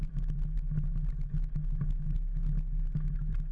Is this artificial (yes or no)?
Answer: no